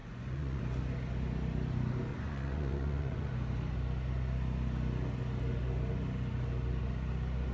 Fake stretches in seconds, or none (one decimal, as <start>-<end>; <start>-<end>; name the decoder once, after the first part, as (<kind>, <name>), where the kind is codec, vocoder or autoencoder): 0.0-0.6 (vocoder, Vocos); 2.1-3.3